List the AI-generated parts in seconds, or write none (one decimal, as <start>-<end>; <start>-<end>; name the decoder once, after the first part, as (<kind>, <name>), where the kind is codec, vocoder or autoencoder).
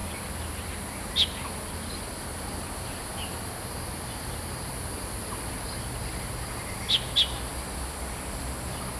none